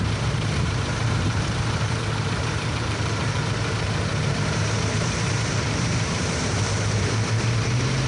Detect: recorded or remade remade